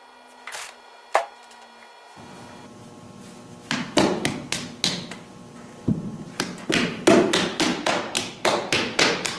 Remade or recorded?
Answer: recorded